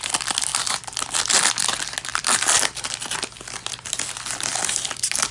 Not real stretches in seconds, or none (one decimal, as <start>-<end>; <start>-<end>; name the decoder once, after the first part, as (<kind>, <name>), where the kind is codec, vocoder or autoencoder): none